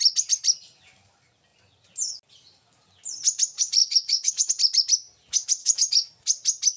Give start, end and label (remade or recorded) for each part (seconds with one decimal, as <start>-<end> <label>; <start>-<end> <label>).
0.0-3.8 recorded; 3.8-4.5 remade; 4.5-5.6 recorded; 5.6-6.1 remade; 6.1-6.8 recorded